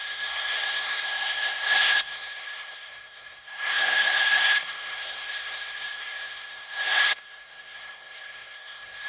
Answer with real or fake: fake